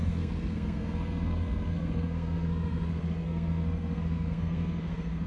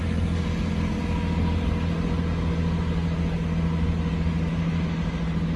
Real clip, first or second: second